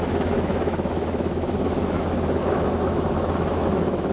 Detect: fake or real fake